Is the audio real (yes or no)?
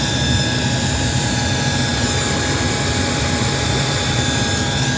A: yes